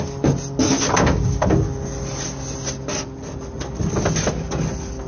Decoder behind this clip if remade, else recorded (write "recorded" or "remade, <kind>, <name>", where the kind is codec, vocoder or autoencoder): recorded